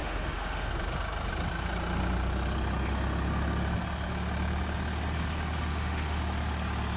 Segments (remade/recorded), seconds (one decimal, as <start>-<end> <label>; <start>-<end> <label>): 0.0-0.7 remade; 0.7-5.7 recorded; 5.7-6.2 remade; 6.2-7.0 recorded